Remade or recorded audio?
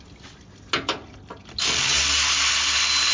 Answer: recorded